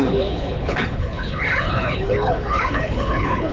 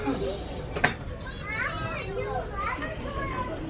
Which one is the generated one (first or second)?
first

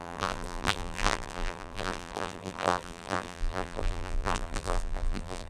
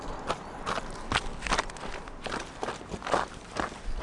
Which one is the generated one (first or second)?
first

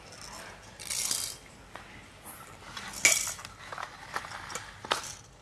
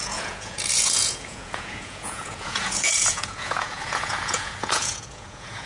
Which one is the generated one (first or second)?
second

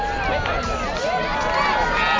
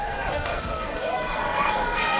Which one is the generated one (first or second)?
second